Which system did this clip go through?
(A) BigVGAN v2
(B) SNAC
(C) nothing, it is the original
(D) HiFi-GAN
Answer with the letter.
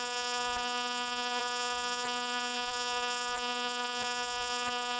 B